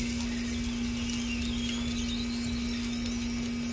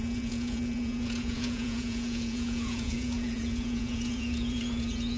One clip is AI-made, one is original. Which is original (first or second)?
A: first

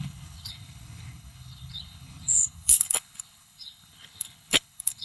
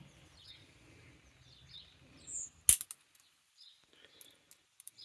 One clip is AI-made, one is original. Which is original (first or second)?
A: second